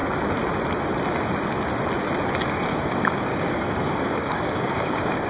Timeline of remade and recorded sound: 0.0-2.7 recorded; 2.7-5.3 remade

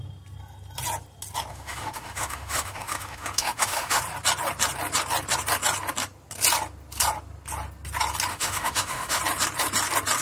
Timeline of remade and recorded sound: 0.0-1.5 recorded; 1.5-4.0 remade; 4.0-8.3 recorded; 8.3-9.2 remade; 9.2-10.2 recorded

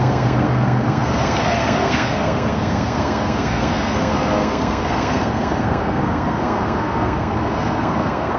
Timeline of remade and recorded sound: 0.0-8.4 remade